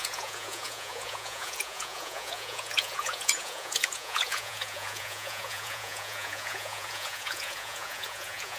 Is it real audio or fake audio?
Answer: fake